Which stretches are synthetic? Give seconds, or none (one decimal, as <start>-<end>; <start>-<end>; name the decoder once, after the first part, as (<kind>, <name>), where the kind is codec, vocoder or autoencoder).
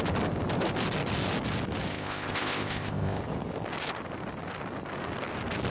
1.9-3.2 (codec, ZipCodec)